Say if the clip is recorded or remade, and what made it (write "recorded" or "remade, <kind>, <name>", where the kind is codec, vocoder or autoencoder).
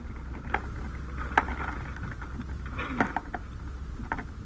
recorded